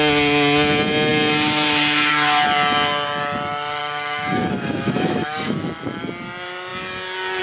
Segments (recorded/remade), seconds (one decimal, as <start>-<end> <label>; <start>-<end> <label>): 0.0-3.8 recorded; 3.8-6.0 remade; 6.0-7.4 recorded